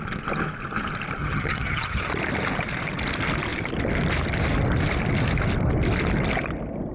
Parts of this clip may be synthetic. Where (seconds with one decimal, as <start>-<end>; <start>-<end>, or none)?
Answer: 1.2-2.1